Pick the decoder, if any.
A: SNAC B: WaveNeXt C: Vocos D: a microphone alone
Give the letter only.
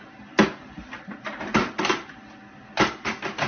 D